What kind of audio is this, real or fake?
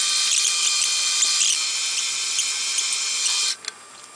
real